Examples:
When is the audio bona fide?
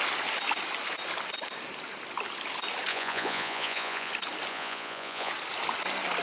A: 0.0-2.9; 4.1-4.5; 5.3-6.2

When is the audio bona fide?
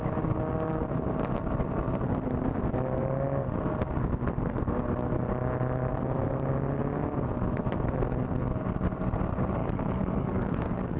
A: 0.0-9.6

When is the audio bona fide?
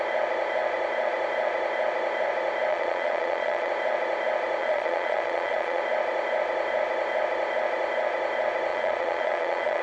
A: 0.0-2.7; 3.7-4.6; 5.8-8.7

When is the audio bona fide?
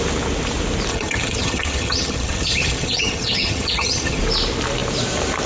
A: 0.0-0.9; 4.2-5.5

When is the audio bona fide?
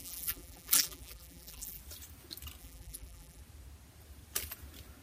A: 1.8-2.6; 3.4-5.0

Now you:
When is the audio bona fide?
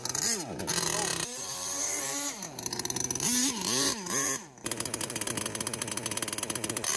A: 0.0-1.1; 5.3-7.0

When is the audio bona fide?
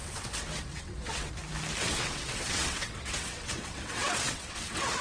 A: 1.3-1.8